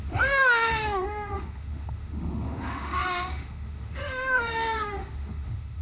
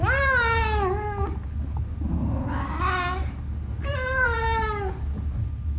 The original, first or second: second